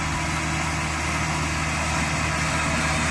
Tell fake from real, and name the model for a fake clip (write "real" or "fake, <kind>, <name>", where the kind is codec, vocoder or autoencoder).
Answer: real